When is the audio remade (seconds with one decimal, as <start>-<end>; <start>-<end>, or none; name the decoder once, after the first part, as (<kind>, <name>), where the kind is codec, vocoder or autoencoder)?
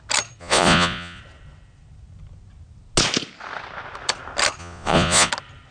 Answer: 0.4-1.2 (vocoder, Vocos); 4.6-5.3